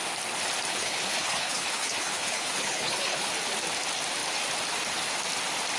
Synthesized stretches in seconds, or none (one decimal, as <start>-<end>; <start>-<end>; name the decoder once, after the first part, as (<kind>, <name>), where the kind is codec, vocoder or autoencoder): 0.7-3.3 (codec, HILCodec)